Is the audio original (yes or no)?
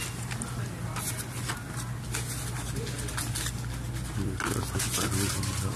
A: yes